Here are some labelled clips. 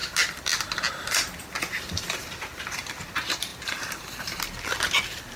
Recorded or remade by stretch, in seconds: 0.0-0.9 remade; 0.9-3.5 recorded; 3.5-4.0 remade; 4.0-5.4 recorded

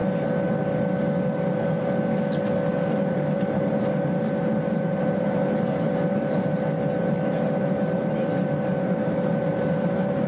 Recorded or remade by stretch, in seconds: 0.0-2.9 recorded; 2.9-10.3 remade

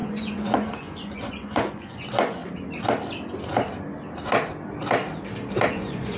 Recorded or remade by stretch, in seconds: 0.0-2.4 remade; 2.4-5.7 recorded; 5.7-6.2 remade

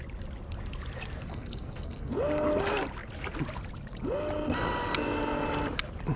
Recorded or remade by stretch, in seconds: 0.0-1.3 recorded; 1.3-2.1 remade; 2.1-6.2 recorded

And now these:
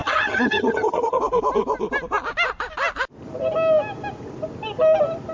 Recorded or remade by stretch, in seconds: 0.0-1.2 remade; 1.2-5.3 recorded

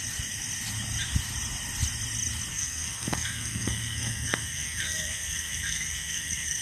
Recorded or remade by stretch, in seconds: 0.0-2.5 recorded; 2.5-6.6 remade

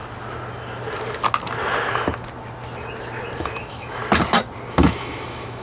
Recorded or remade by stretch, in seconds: 0.0-3.4 recorded; 3.4-4.0 remade; 4.0-4.7 recorded; 4.7-5.6 remade